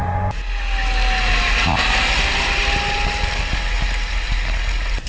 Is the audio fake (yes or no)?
no